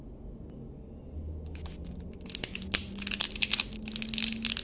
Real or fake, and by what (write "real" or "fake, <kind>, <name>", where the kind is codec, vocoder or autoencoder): real